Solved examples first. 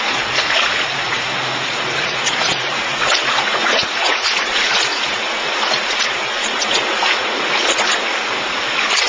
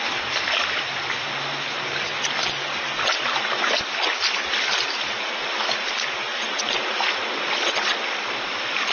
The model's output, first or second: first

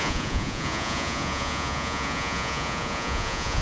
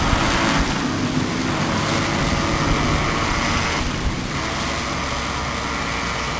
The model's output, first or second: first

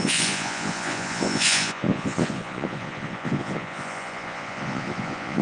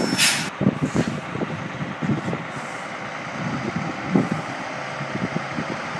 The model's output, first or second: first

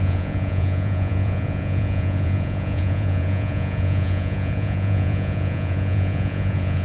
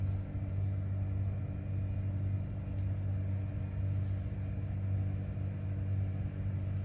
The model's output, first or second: first